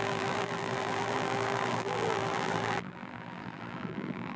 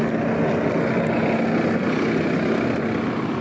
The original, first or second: second